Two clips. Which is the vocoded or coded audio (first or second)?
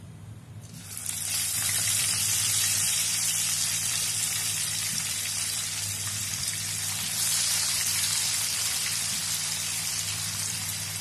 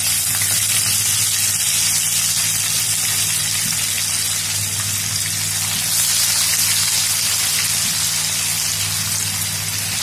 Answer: first